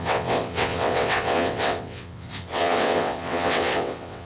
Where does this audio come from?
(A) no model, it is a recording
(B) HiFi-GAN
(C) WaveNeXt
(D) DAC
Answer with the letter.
C